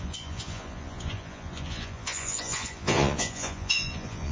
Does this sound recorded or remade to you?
remade